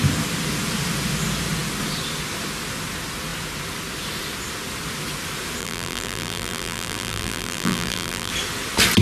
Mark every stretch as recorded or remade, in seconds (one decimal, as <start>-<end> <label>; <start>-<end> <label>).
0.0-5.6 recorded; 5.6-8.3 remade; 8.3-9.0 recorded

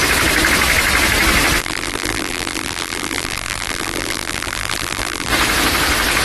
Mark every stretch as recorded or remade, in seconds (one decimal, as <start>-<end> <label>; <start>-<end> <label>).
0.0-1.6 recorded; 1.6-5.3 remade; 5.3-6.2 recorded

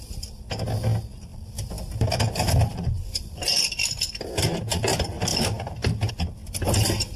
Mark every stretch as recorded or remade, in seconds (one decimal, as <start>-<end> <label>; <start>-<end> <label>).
0.0-1.3 recorded; 1.3-3.7 remade; 3.7-5.3 recorded; 5.3-6.1 remade; 6.1-7.2 recorded

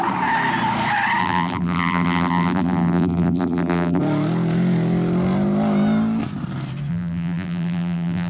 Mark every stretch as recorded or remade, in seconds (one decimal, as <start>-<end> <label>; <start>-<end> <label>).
0.0-1.2 recorded; 1.2-4.0 remade; 4.0-6.9 recorded; 6.9-8.3 remade